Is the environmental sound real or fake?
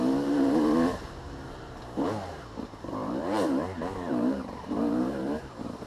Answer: fake